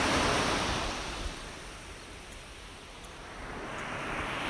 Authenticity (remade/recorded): recorded